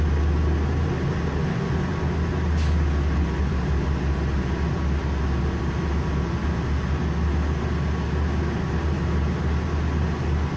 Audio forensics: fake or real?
real